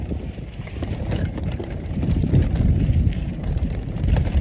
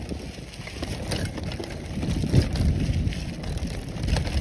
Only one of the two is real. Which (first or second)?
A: second